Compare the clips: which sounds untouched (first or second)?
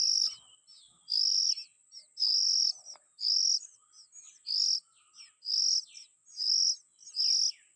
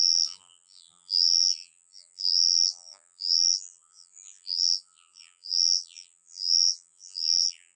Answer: first